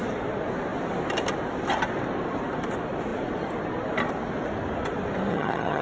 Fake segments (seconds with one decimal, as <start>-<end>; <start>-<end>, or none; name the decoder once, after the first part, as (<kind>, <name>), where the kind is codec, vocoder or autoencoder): 5.3-5.8 (vocoder, HiFi-GAN)